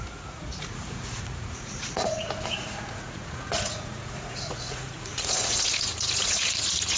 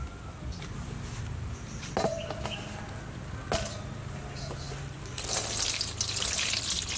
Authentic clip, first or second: second